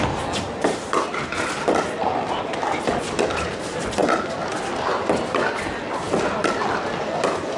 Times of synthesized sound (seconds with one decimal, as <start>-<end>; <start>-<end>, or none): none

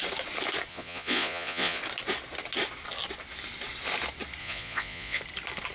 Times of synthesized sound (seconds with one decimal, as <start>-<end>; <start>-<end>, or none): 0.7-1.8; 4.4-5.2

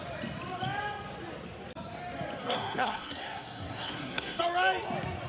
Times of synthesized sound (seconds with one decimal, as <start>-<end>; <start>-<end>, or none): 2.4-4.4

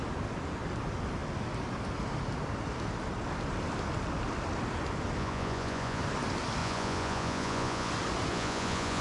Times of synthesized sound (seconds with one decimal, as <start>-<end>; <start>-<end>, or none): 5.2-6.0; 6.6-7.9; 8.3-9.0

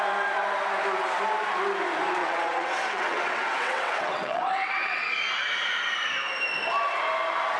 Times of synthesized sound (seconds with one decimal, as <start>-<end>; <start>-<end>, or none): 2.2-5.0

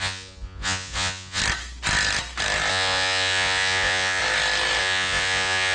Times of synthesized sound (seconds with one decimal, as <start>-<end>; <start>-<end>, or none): 0.0-1.4; 2.7-4.2; 4.8-5.7

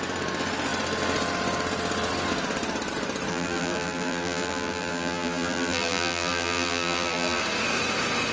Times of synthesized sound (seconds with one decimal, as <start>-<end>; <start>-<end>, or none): 3.3-7.4